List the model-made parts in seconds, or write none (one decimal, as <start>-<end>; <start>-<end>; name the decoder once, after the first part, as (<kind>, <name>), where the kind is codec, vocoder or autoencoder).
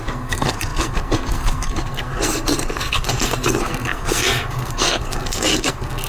0.0-6.1 (codec, SNAC)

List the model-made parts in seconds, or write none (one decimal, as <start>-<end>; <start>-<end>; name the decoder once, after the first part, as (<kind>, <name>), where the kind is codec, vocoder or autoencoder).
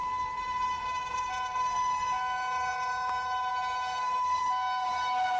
none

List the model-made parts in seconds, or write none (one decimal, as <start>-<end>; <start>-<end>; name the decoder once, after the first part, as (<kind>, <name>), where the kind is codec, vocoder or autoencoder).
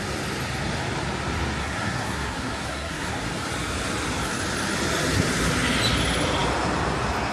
1.6-3.1 (codec, SNAC)